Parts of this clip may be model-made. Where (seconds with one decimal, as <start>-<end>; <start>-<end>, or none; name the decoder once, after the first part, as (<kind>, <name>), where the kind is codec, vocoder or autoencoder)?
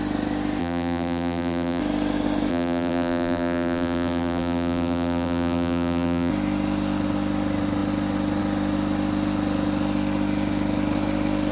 0.6-1.8 (vocoder, BigVGAN v2); 2.5-6.3